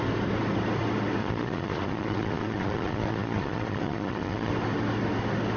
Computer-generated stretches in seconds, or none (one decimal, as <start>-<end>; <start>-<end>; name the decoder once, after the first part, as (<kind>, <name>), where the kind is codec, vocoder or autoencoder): 1.2-4.5 (vocoder, Vocos)